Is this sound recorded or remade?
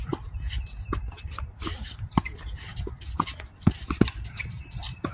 recorded